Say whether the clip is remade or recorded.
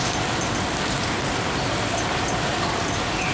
recorded